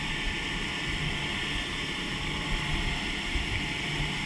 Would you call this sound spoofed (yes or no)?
no